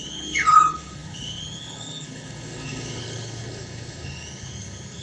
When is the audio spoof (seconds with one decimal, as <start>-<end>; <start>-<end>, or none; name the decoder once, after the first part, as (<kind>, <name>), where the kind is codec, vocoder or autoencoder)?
0.0-5.0 (codec, HILCodec)